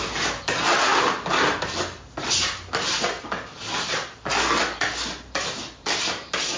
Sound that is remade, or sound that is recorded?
recorded